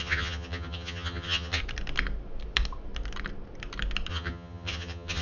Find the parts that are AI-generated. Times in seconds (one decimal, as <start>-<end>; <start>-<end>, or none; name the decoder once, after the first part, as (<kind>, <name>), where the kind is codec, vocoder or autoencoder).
0.0-1.6 (vocoder, HiFi-GAN); 4.1-5.2